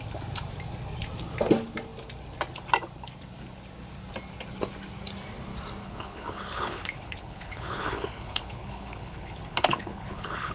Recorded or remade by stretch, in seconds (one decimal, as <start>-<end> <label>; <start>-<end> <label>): 0.0-5.8 recorded; 5.8-10.5 remade